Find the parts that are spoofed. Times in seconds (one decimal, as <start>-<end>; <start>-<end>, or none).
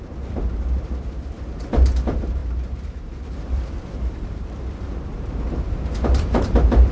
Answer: 0.0-6.9